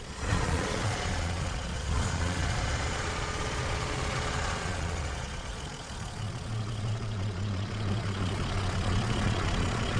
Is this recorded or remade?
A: remade